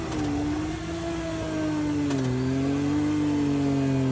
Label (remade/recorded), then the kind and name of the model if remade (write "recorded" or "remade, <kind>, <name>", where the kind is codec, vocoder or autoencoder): recorded